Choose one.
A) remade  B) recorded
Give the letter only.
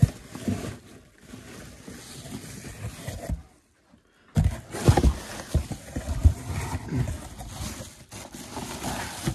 B